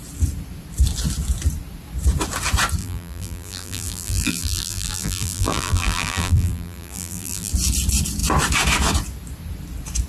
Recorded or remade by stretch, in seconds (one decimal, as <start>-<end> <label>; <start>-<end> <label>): 0.0-2.8 recorded; 2.8-7.5 remade; 7.5-10.1 recorded